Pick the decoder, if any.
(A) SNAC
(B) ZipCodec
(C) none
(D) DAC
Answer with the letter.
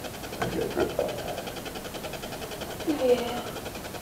C